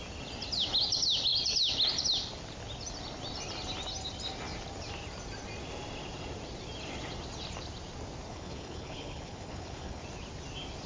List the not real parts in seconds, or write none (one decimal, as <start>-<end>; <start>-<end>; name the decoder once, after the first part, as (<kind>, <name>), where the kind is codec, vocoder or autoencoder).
8.3-10.0 (codec, HILCodec)